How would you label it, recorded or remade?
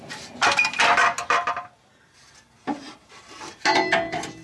recorded